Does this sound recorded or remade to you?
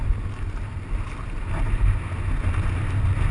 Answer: recorded